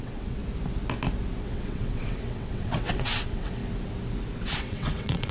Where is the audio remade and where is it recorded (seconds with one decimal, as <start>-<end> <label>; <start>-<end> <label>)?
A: 0.0-0.4 remade; 0.4-1.4 recorded; 1.4-3.6 remade; 3.6-4.4 recorded; 4.4-5.3 remade

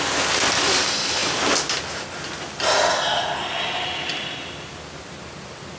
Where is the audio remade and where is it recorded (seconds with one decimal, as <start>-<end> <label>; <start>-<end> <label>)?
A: 0.0-5.8 recorded

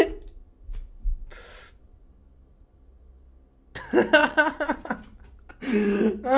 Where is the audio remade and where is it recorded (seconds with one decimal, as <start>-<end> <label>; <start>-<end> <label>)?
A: 0.0-4.2 recorded; 4.2-4.9 remade; 4.9-6.4 recorded